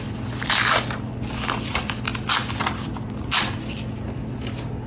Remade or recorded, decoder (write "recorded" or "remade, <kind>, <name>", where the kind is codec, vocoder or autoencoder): recorded